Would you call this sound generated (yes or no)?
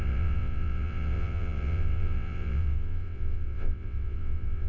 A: yes